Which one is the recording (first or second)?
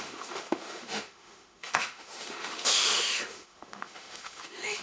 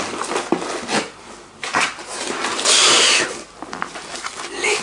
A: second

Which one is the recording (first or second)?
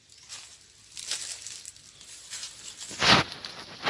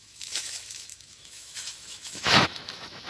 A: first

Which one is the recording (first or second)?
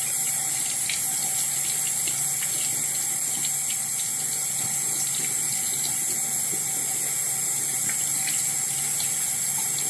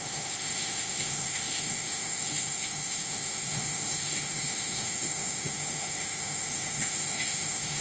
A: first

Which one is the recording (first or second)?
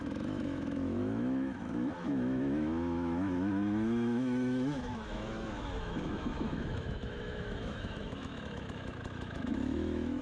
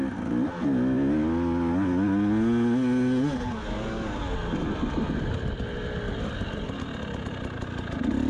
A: second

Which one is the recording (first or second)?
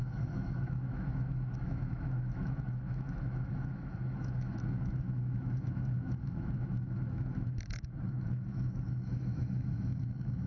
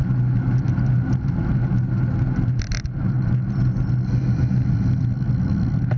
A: second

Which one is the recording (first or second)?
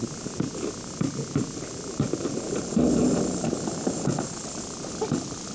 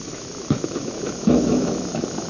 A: first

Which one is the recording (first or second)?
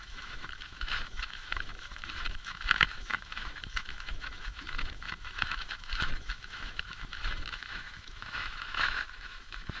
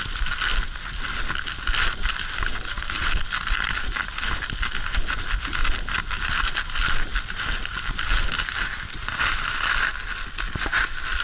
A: second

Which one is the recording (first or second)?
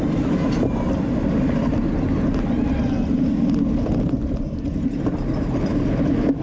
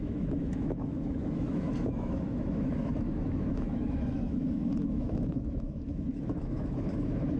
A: first